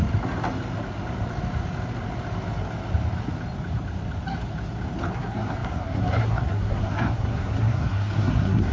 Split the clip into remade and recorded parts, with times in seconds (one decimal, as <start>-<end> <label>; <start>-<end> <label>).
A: 0.0-5.1 recorded; 5.1-8.7 remade